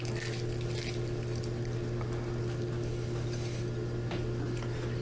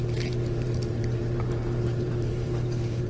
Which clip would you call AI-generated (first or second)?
second